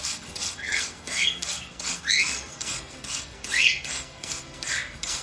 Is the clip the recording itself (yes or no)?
no